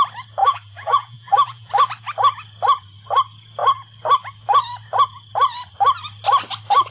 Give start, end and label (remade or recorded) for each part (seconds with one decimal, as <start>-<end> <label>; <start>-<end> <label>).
0.0-0.4 recorded; 0.4-1.7 remade; 1.7-6.9 recorded